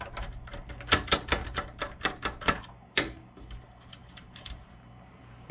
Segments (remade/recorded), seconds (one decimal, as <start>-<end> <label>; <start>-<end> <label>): 0.0-1.4 recorded; 1.4-2.6 remade; 2.6-4.0 recorded; 4.0-4.7 remade; 4.7-5.5 recorded

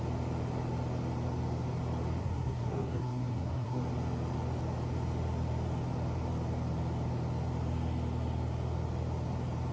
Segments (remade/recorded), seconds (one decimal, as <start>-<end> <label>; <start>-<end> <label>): 0.0-2.2 recorded; 2.2-3.8 remade; 3.8-9.7 recorded